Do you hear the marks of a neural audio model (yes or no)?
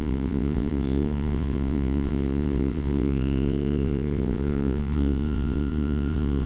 yes